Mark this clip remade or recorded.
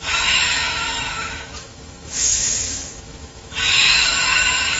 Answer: remade